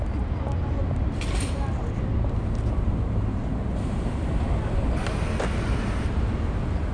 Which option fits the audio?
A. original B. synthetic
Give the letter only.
A